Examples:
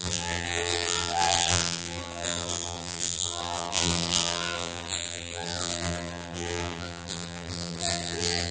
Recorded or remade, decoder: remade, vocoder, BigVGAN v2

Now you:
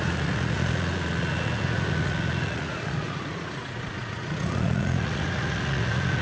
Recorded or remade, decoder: remade, vocoder, Vocos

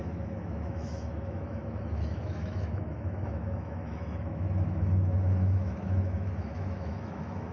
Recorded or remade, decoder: remade, autoencoder, DAC-VAE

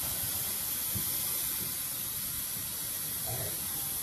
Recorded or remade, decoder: remade, vocoder, BigVGAN v2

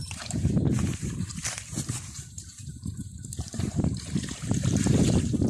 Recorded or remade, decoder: remade, vocoder, BigVGAN v2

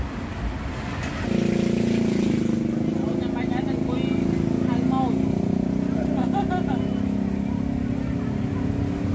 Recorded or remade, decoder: recorded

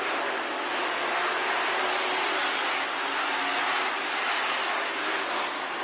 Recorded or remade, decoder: recorded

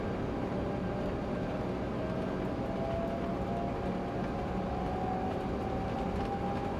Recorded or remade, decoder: recorded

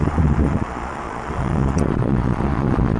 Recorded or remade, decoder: remade, vocoder, Vocos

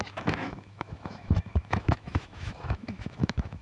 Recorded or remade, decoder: remade, autoencoder, DAC-VAE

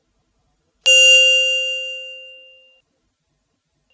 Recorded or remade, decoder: recorded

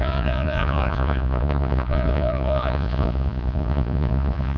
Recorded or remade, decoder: remade, vocoder, Vocos